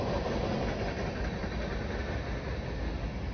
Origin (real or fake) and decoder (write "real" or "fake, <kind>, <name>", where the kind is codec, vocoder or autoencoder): real